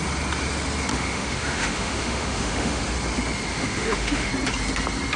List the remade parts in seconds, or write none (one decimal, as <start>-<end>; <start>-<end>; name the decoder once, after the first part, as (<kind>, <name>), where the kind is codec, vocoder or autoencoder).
0.9-2.8 (autoencoder, DAC-VAE); 3.5-4.3